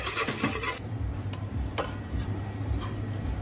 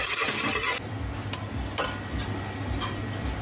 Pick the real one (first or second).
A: second